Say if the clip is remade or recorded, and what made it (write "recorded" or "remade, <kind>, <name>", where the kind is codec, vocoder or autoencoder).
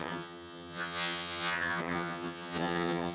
remade, vocoder, HiFi-GAN